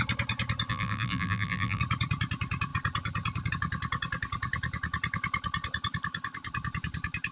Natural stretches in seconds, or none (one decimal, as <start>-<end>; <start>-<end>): 0.0-0.7; 1.8-7.3